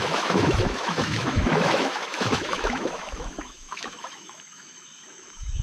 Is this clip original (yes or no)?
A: no